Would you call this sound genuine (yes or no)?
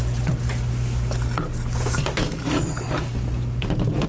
yes